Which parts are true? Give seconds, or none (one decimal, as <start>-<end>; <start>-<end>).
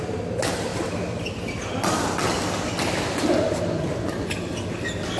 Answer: 0.0-5.2